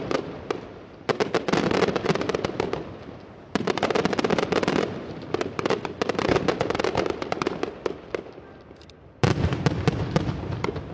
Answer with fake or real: fake